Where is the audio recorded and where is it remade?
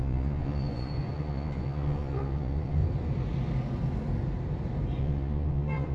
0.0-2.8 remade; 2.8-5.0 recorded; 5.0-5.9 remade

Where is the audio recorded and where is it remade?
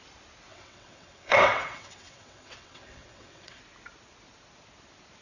0.0-0.5 recorded; 0.5-3.6 remade; 3.6-5.2 recorded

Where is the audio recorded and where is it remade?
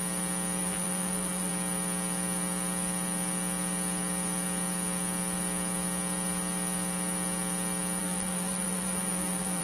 0.0-0.6 recorded; 0.6-1.5 remade; 1.5-8.0 recorded; 8.0-9.6 remade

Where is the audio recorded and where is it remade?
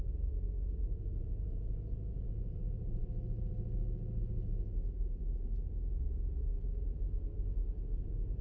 0.0-8.4 recorded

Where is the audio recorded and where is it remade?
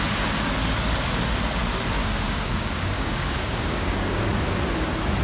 0.0-2.0 recorded; 2.0-4.3 remade; 4.3-5.2 recorded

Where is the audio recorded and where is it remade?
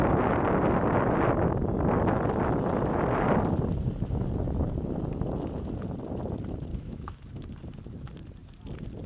0.0-6.7 recorded; 6.7-7.2 remade; 7.2-9.1 recorded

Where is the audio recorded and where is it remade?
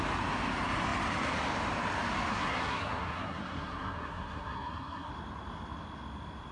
0.0-2.3 recorded; 2.3-5.1 remade; 5.1-6.5 recorded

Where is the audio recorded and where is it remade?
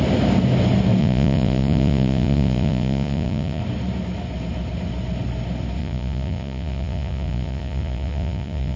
0.0-1.0 recorded; 1.0-3.6 remade; 3.6-5.8 recorded; 5.8-8.8 remade